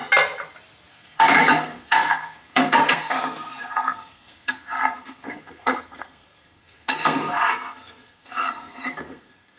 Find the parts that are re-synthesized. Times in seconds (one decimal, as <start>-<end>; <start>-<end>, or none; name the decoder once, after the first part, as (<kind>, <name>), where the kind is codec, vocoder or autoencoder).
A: 0.9-9.6 (codec, SNAC)